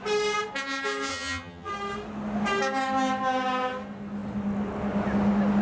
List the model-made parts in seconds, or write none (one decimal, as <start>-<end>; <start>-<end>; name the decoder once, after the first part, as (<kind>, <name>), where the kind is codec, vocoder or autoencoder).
1.1-1.7 (vocoder, HiFi-GAN)